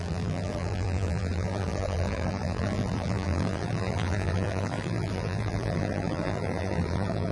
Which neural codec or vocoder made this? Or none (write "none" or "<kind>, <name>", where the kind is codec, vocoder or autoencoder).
vocoder, BigVGAN v2